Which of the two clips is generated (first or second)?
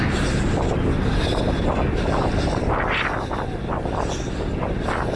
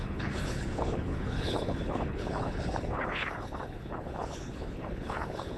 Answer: second